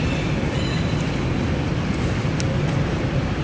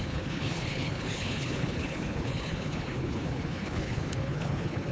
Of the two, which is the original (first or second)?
first